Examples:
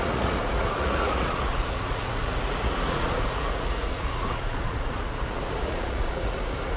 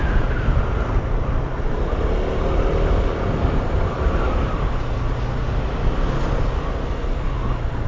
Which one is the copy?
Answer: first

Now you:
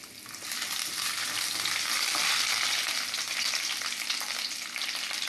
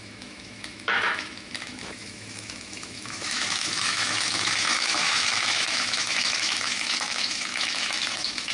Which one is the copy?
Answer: second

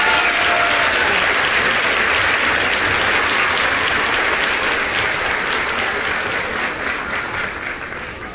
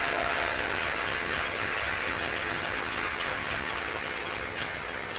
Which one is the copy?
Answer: second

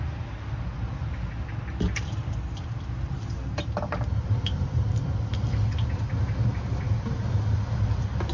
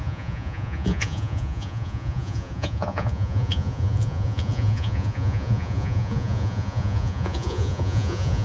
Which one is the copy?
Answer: second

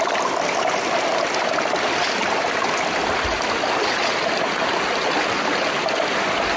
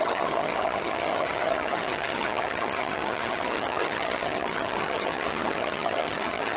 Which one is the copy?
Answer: second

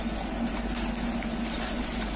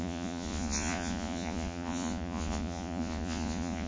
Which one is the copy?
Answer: second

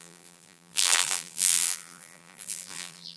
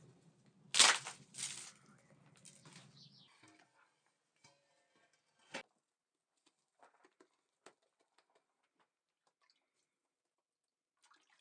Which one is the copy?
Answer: first